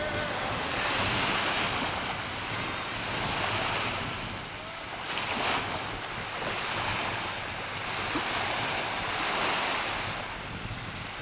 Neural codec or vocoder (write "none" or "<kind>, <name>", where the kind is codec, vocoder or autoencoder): none